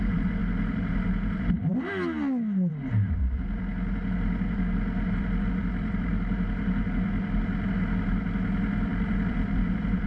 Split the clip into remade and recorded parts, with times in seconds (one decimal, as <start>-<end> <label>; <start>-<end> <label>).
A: 0.0-0.4 remade; 0.4-0.9 recorded; 0.9-1.7 remade; 1.7-2.7 recorded; 2.7-3.2 remade; 3.2-5.5 recorded; 5.5-6.1 remade; 6.1-9.0 recorded; 9.0-10.1 remade

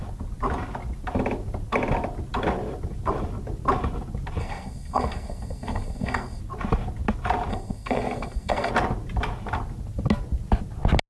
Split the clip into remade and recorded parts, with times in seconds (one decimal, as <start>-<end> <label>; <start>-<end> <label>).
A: 0.0-4.4 recorded; 4.4-6.4 remade; 6.4-7.5 recorded; 7.5-8.7 remade; 8.7-11.1 recorded

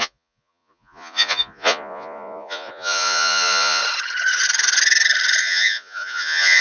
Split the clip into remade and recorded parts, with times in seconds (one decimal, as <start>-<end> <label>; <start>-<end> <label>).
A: 0.0-3.8 remade; 3.8-5.4 recorded; 5.4-6.6 remade

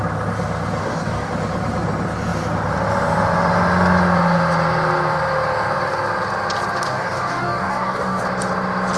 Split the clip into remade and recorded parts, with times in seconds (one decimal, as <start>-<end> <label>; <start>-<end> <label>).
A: 0.0-0.8 recorded; 0.8-1.3 remade; 1.3-6.9 recorded; 6.9-8.2 remade; 8.2-9.0 recorded

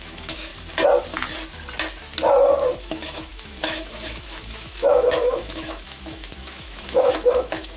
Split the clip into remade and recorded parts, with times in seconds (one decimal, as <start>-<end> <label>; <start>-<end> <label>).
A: 0.0-0.5 remade; 0.5-2.8 recorded; 2.8-7.8 remade

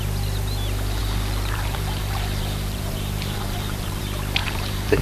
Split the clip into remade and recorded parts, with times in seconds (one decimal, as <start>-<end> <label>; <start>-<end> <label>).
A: 0.0-1.0 recorded; 1.0-4.0 remade; 4.0-4.4 recorded; 4.4-5.0 remade

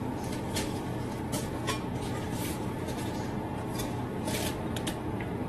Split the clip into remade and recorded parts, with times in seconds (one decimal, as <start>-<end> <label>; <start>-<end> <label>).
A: 0.0-5.5 recorded